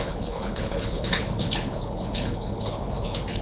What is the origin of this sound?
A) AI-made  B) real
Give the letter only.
A